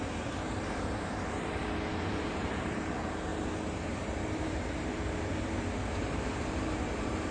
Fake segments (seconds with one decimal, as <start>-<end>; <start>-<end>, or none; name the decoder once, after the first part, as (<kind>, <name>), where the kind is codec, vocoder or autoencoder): 0.0-1.6 (vocoder, BigVGAN v2); 2.3-7.3